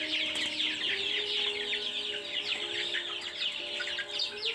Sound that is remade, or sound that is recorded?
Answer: recorded